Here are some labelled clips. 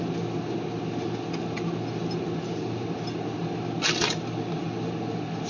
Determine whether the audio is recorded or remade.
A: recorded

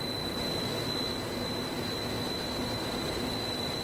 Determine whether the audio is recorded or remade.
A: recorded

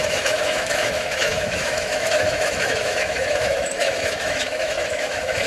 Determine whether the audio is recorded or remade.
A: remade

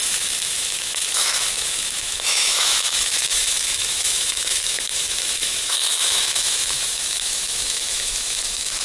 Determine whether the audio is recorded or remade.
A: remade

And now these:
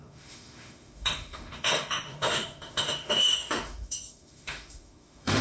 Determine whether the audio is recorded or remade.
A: remade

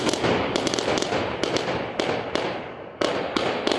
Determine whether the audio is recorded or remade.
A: recorded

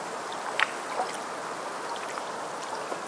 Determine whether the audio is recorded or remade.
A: recorded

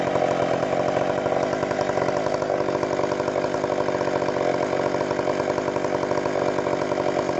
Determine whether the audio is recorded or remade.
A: recorded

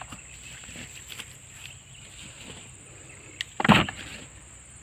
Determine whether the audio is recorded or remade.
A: recorded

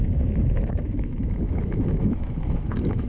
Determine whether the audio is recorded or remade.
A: remade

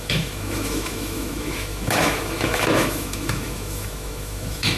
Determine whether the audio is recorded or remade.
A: remade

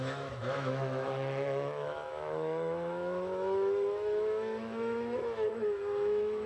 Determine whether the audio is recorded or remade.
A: remade